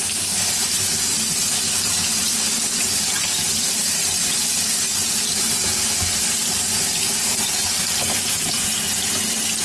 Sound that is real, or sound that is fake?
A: real